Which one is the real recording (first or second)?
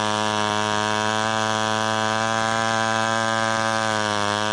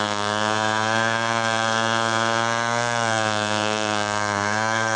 first